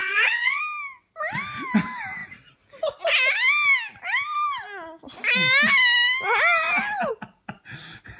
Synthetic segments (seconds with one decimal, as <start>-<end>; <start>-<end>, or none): 0.0-0.6